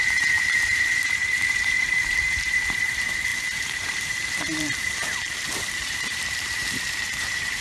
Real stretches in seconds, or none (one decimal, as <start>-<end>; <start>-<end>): none